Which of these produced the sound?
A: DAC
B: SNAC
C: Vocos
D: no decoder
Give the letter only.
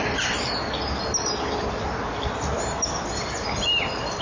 D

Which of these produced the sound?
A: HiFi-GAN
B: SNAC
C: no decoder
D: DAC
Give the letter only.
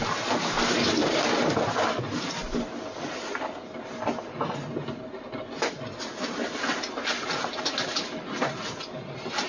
C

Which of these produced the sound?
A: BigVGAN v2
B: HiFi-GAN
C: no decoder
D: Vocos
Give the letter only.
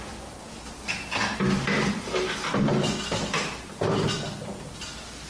C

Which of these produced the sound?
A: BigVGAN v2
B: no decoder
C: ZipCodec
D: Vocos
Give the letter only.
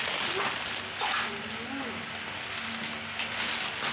B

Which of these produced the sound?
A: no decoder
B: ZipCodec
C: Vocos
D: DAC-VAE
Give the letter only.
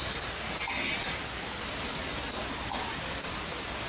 A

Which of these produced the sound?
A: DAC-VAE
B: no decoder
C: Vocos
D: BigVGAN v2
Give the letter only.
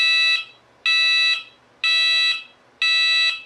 B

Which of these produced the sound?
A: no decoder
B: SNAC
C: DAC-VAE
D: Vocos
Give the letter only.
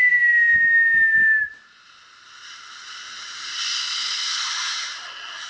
A